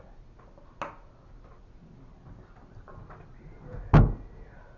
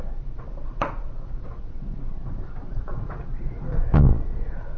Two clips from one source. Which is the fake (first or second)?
second